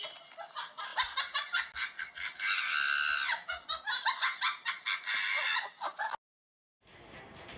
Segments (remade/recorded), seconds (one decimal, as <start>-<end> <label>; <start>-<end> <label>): 0.0-7.6 recorded